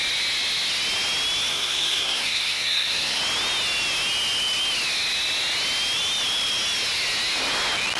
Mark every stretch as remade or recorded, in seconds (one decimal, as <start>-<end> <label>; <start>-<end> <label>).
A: 0.0-1.5 recorded; 1.5-3.2 remade; 3.2-8.0 recorded